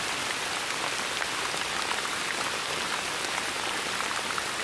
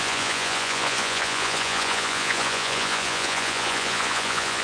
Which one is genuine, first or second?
first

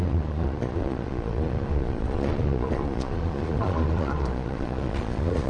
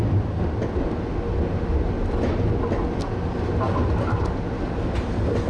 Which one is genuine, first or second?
second